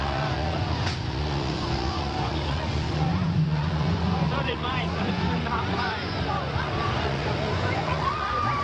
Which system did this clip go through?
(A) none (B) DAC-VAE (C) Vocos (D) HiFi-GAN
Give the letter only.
C